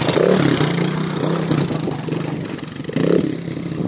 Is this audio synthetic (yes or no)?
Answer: no